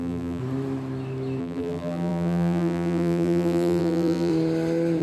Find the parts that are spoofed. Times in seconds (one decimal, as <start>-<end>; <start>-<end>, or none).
0.0-0.4; 1.4-4.3